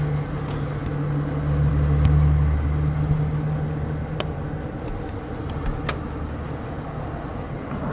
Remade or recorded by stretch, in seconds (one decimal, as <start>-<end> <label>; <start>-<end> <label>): 0.0-7.9 recorded